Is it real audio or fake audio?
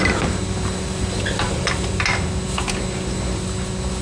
real